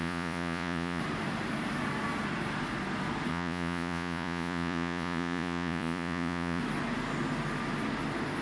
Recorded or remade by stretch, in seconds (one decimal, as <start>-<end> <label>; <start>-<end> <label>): 0.0-1.0 remade; 1.0-3.3 recorded; 3.3-6.6 remade; 6.6-8.4 recorded